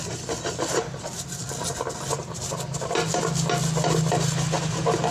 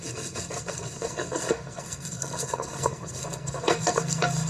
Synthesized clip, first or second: second